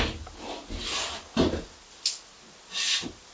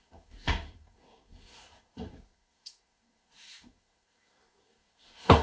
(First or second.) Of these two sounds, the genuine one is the first